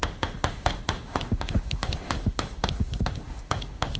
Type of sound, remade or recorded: remade